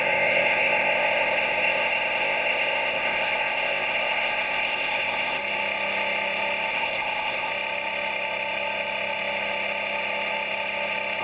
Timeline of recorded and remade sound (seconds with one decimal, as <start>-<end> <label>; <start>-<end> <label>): 0.0-5.4 remade; 5.4-6.7 recorded; 6.7-7.5 remade; 7.5-11.2 recorded